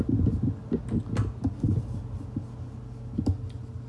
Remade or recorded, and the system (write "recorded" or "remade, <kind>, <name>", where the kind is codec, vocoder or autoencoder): recorded